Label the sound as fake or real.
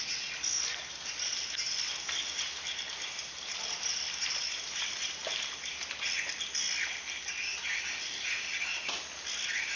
real